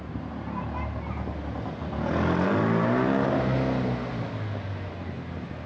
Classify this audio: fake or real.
real